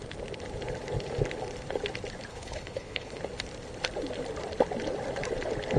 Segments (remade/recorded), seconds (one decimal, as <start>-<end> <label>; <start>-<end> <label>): 0.0-2.3 recorded; 2.3-3.2 remade; 3.2-5.8 recorded